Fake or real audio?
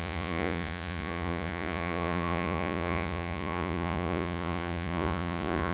fake